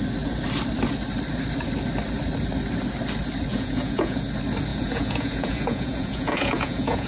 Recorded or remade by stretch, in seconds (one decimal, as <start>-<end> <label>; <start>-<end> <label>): 0.0-3.5 recorded; 3.5-4.2 remade; 4.2-4.7 recorded; 4.7-7.1 remade